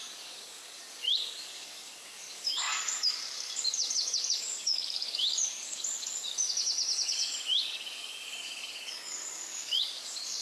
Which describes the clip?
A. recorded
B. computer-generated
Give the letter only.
B